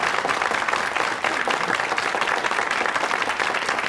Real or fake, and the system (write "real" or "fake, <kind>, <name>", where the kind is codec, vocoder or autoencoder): real